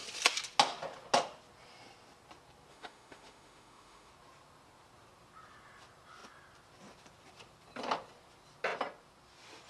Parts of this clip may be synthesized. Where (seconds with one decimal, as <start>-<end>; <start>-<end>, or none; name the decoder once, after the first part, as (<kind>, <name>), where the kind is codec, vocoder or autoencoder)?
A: 2.7-4.1 (autoencoder, DAC-VAE)